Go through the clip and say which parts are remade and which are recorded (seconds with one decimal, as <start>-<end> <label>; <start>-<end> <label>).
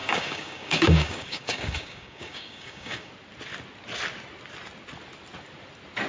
0.0-3.1 remade; 3.1-6.1 recorded